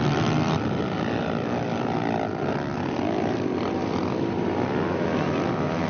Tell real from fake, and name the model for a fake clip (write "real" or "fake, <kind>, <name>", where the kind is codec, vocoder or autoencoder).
real